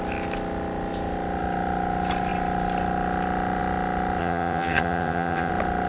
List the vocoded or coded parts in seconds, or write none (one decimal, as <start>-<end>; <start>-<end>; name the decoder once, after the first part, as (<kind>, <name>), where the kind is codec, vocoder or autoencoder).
4.2-5.5 (vocoder, HiFi-GAN)